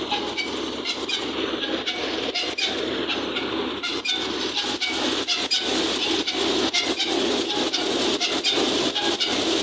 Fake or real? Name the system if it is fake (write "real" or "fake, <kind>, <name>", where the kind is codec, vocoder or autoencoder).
real